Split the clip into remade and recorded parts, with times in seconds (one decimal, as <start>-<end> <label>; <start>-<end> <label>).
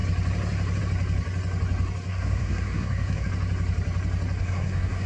0.0-2.1 recorded; 2.1-3.3 remade; 3.3-4.4 recorded; 4.4-5.1 remade